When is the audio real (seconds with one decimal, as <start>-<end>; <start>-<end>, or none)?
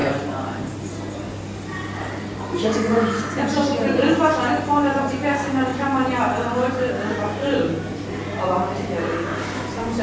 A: 0.0-10.0